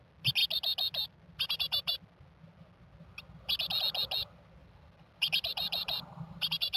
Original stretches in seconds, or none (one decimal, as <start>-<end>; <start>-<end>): 0.0-4.6